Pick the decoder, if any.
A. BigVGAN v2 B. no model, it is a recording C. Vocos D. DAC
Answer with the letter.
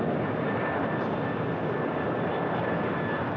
B